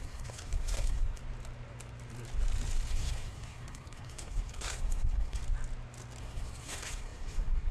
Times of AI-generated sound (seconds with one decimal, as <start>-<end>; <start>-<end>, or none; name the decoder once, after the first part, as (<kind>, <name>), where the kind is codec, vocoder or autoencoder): 0.0-1.2 (codec, SNAC); 2.9-5.4; 6.2-7.7